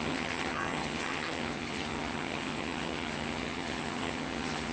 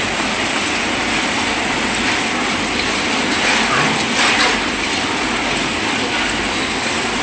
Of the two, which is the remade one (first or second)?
first